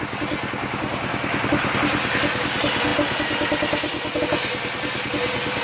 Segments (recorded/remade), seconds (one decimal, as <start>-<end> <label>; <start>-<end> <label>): 0.0-5.6 recorded